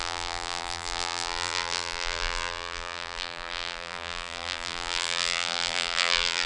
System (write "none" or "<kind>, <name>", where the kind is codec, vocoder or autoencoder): vocoder, BigVGAN v2